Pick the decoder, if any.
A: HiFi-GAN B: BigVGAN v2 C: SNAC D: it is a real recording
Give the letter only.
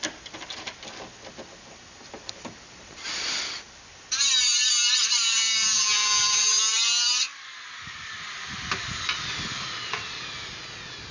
B